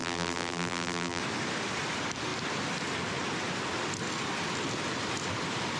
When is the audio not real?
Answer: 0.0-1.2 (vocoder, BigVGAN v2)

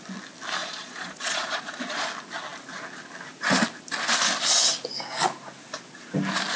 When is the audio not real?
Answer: 0.6-2.1 (vocoder, Vocos)

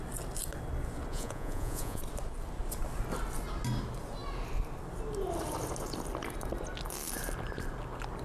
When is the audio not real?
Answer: 1.1-2.0 (vocoder, Vocos)